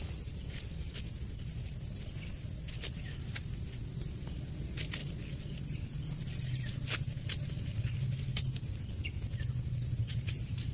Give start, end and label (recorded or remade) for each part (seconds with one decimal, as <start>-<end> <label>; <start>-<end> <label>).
0.0-10.7 recorded